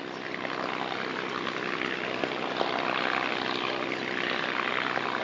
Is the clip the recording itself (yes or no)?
yes